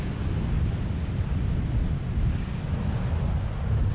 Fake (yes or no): no